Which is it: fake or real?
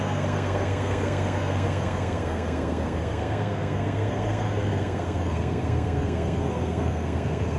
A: fake